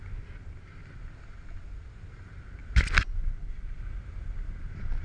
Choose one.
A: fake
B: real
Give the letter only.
B